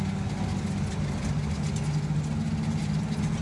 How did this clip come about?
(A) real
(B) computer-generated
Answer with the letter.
A